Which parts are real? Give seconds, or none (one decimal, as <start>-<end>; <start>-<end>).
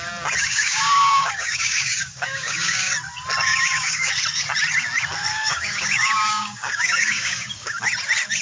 0.0-0.4; 2.9-3.5; 4.1-5.3; 7.8-8.4